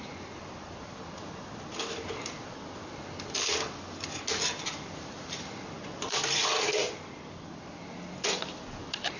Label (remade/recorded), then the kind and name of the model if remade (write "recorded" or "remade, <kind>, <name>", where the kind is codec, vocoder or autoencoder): recorded